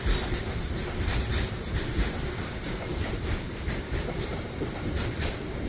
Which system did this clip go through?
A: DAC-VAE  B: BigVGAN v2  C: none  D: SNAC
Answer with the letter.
B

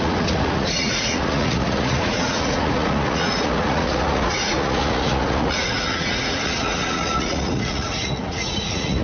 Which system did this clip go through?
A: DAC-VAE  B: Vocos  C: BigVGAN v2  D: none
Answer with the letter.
B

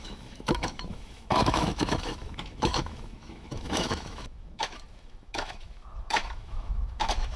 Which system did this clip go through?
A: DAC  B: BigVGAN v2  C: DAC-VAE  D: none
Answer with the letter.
C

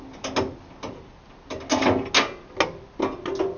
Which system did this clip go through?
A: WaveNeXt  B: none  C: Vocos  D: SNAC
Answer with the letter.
B